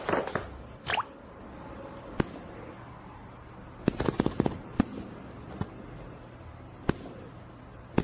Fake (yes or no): no